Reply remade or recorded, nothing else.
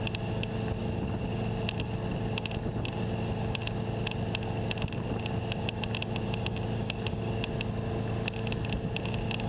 recorded